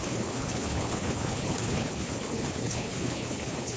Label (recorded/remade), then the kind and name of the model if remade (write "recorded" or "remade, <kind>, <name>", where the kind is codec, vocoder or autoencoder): remade, codec, HILCodec